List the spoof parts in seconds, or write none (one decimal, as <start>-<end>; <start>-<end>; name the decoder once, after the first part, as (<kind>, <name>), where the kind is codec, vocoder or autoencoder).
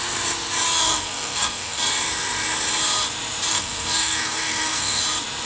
0.8-1.8 (codec, SNAC); 3.5-5.0